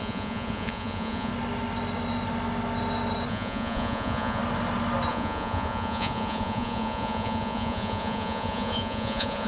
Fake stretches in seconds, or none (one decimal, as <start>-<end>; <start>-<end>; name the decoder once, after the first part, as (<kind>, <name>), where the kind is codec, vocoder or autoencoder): 0.0-1.3 (vocoder, Vocos); 3.3-4.4; 5.1-9.5